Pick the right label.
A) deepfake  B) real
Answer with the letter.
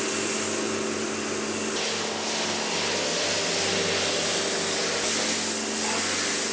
B